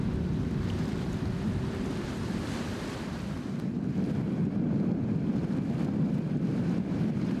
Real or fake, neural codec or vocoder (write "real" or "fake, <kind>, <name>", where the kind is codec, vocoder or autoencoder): fake, vocoder, BigVGAN v2